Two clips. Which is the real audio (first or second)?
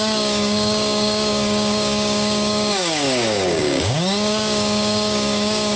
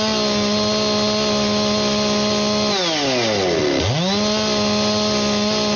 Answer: second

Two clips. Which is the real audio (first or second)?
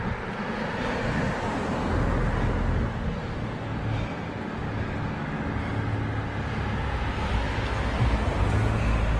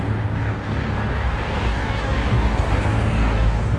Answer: first